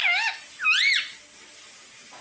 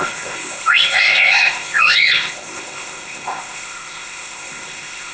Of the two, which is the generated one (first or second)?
second